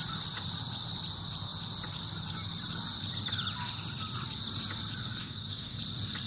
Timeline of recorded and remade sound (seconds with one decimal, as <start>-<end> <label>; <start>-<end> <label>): 0.0-5.2 recorded; 5.2-5.8 remade; 5.8-6.3 recorded